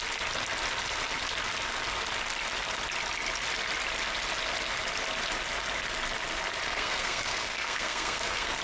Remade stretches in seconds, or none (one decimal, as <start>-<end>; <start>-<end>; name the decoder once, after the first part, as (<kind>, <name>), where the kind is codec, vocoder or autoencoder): 6.7-8.6 (codec, SNAC)